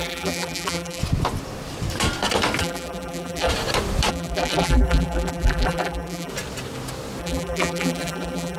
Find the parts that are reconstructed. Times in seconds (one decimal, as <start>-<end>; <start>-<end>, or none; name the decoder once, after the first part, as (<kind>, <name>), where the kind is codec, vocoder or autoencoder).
0.0-1.0 (vocoder, BigVGAN v2); 2.6-3.5; 4.1-6.3; 7.2-8.6